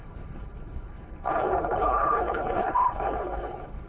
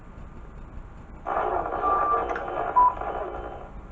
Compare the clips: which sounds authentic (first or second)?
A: second